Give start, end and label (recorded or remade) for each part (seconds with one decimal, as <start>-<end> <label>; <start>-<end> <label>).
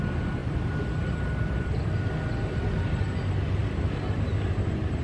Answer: 0.0-0.4 recorded; 0.4-3.0 remade; 3.0-3.6 recorded; 3.6-4.3 remade; 4.3-5.0 recorded